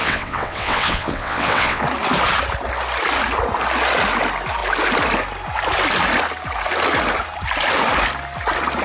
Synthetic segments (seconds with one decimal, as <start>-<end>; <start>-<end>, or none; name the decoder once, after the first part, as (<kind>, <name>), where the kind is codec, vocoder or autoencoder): 0.0-1.8 (vocoder, WaveNeXt)